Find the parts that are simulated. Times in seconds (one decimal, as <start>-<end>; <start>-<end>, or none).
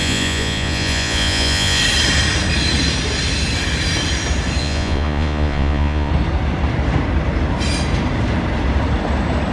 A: 0.0-1.8; 4.6-6.1